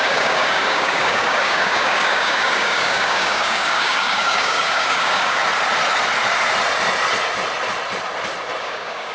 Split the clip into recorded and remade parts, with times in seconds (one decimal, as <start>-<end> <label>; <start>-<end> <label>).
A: 0.0-5.4 remade; 5.4-8.6 recorded; 8.6-9.1 remade